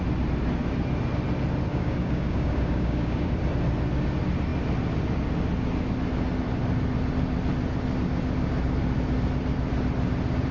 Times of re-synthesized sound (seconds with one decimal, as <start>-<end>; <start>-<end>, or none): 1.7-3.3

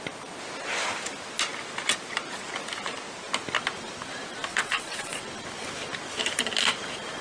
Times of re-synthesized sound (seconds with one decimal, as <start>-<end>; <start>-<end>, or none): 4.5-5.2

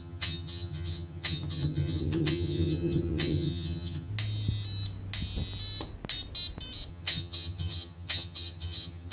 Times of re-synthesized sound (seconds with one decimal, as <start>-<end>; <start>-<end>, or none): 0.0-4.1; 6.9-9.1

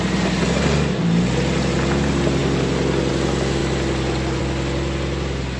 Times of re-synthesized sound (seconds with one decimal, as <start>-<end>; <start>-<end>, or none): none

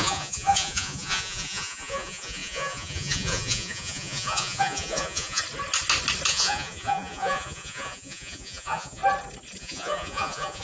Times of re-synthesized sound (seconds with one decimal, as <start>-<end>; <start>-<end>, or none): 0.0-5.4; 6.3-9.0; 9.6-10.6

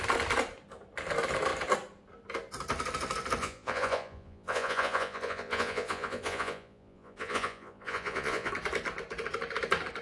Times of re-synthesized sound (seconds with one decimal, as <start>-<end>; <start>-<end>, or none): 3.4-8.5